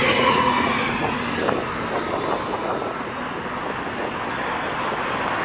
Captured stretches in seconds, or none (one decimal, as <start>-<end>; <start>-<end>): 1.2-2.5; 3.2-5.4